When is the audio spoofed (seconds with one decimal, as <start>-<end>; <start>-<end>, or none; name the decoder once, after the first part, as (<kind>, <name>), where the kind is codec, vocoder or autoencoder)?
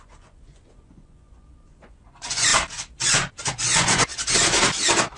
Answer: 0.0-2.5 (vocoder, Vocos); 3.1-4.1